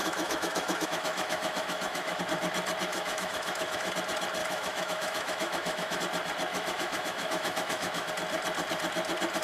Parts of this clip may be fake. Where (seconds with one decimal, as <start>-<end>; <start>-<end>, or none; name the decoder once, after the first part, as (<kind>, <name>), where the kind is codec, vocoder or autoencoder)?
0.0-2.2 (autoencoder, DAC-VAE); 2.9-3.9; 4.4-6.0; 6.5-8.1